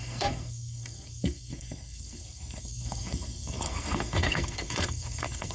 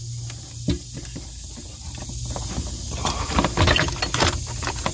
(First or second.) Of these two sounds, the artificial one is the first